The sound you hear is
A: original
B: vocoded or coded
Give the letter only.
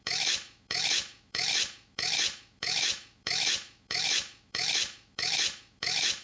B